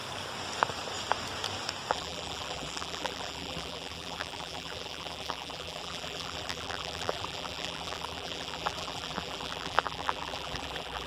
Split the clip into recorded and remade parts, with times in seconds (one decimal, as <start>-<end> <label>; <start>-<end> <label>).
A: 0.0-1.9 recorded; 1.9-11.1 remade